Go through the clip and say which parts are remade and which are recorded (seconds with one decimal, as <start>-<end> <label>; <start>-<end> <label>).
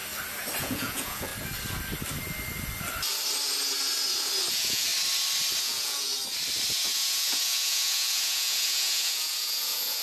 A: 0.0-0.6 recorded; 0.6-1.3 remade; 1.3-4.5 recorded; 4.5-4.9 remade; 4.9-5.6 recorded; 5.6-6.1 remade; 6.1-6.7 recorded; 6.7-10.0 remade